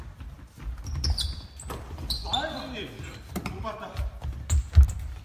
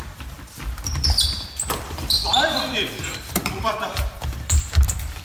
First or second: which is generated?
second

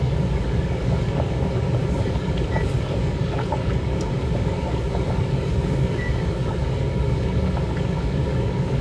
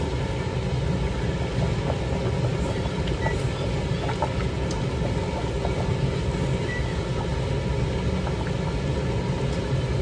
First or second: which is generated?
first